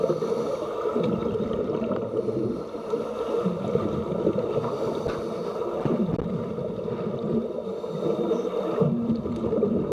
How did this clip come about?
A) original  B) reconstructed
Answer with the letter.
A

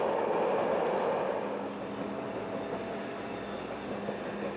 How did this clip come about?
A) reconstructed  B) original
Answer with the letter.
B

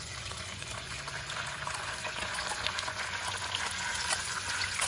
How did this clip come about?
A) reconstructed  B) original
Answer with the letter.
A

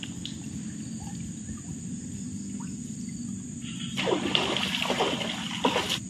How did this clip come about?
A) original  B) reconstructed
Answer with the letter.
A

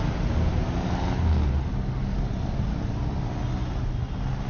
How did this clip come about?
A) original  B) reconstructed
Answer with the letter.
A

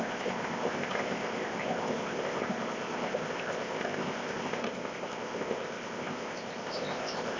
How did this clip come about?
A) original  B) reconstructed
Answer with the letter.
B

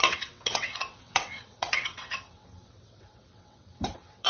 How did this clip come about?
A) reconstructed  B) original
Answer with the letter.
A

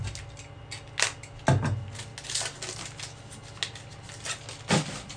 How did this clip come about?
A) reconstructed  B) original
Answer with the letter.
B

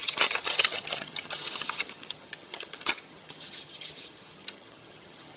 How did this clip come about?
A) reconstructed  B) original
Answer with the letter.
A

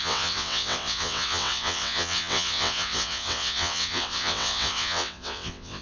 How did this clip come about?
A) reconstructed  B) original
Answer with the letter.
A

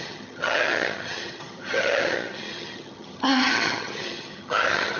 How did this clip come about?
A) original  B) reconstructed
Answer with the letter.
B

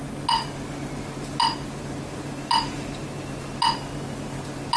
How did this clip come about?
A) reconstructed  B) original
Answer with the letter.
B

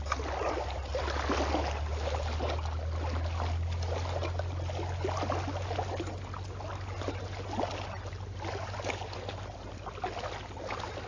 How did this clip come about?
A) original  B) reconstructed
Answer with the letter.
A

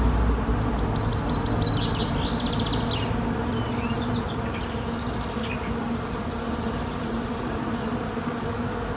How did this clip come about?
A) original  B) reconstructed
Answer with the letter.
A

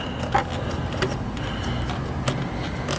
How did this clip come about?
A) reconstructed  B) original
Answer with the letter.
B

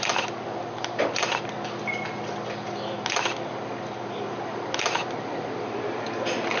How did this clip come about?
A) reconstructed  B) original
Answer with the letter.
B